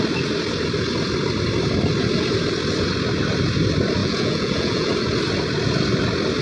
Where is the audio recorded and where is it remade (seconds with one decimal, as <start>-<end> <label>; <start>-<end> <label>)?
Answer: 0.0-4.0 recorded; 4.0-4.9 remade; 4.9-6.4 recorded